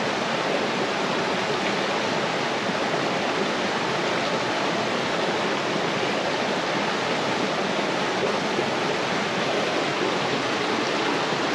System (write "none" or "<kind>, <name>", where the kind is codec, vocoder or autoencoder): none